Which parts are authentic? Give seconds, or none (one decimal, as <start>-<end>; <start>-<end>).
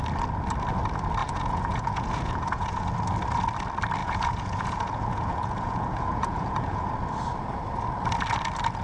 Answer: 0.0-1.2; 2.9-4.0; 6.9-8.8